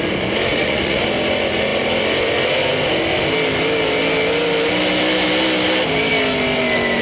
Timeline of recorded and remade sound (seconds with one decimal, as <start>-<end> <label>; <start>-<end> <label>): 0.0-0.5 recorded; 0.5-1.0 remade; 1.0-7.0 recorded